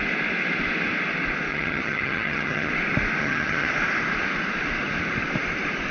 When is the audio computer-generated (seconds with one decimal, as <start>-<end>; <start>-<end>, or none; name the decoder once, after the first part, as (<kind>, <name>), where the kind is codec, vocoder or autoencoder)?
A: 1.5-2.7 (vocoder, HiFi-GAN); 3.2-3.7

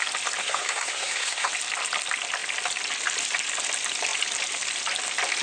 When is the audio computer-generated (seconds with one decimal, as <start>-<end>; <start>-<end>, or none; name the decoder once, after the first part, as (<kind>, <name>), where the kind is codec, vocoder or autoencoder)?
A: 0.4-1.5 (codec, SNAC)

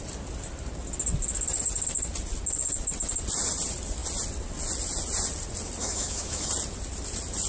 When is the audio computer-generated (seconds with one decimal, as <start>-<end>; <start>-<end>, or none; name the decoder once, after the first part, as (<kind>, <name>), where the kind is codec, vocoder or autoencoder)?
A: 5.8-6.5 (autoencoder, DAC-VAE)

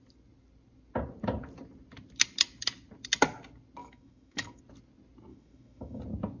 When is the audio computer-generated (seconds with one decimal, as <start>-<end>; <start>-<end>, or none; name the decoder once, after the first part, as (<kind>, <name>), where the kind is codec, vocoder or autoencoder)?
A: 3.8-4.6 (autoencoder, DAC-VAE); 5.3-6.0

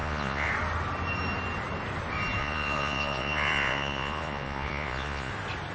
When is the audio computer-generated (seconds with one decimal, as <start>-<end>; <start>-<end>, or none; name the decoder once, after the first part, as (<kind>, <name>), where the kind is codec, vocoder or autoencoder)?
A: 0.0-0.5 (vocoder, Vocos); 2.4-5.3

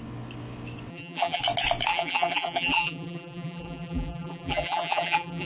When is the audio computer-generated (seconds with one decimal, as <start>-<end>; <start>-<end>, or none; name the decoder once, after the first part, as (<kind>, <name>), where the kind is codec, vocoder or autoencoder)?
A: 0.9-1.4 (vocoder, BigVGAN v2); 1.9-5.5